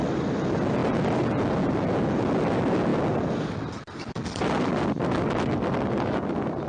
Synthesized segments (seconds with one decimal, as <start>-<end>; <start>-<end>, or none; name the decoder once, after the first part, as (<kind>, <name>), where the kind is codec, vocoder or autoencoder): none